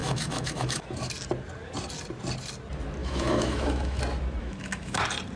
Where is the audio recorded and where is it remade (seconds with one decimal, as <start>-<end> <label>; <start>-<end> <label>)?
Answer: 0.0-1.1 remade; 1.1-3.0 recorded; 3.0-4.0 remade; 4.0-4.4 recorded; 4.4-5.0 remade; 5.0-5.4 recorded